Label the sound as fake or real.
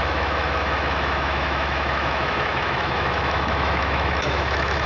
fake